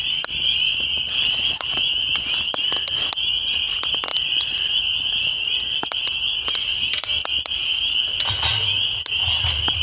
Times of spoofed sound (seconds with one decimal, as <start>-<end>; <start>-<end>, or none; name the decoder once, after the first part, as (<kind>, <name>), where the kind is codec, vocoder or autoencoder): 4.1-4.7 (vocoder, BigVGAN v2)